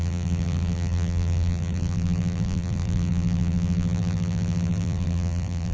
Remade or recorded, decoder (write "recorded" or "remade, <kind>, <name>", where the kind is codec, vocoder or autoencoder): remade, vocoder, BigVGAN v2